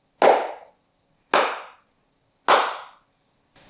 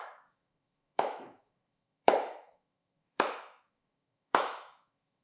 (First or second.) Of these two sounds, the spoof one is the second